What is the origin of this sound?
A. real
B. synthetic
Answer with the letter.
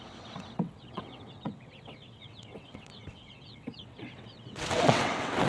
B